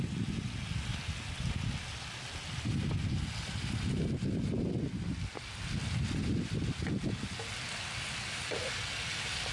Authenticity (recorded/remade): recorded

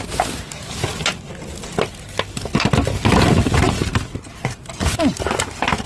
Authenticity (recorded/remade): recorded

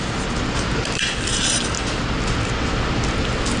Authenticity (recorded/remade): recorded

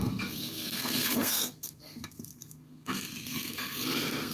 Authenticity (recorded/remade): remade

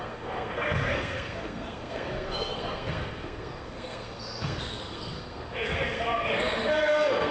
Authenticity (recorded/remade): remade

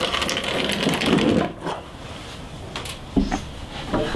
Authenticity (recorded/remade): recorded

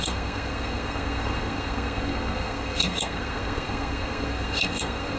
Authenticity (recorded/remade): remade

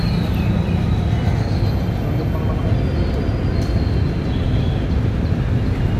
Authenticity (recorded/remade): recorded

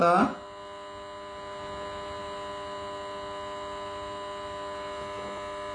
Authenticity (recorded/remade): recorded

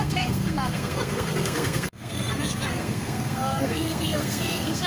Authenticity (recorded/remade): remade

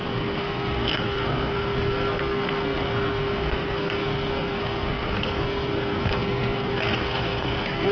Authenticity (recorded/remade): remade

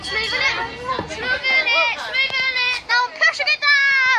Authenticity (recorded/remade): recorded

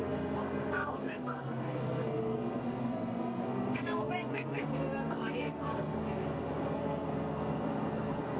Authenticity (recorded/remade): remade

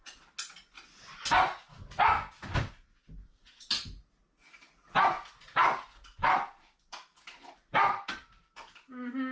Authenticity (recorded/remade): recorded